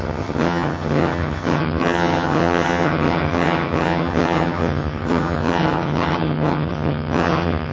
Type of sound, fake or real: fake